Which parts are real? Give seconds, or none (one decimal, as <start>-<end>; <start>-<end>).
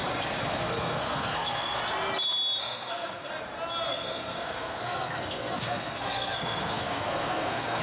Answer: 0.0-0.5; 1.8-2.6; 3.3-3.9